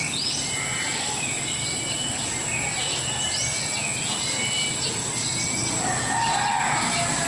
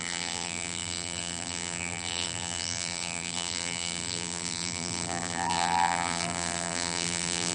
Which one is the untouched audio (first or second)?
first